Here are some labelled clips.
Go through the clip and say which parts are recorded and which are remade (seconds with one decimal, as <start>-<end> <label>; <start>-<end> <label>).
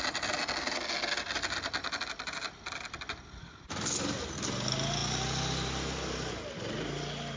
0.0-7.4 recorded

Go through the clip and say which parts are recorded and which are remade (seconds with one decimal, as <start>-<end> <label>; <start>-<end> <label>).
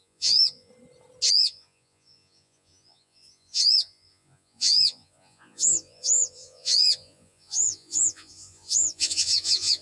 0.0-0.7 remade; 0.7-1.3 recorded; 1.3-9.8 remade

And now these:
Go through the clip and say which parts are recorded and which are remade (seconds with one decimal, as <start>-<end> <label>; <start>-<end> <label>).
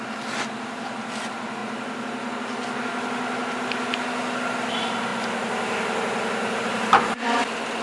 0.0-7.8 recorded